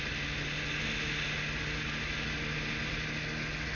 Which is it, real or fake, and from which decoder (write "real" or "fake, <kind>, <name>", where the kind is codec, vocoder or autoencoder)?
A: real